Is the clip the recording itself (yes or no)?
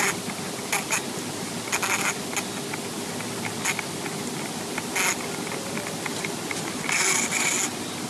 yes